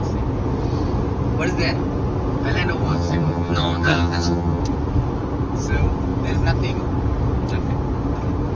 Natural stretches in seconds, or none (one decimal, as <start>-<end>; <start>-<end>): 0.0-2.9; 4.6-8.6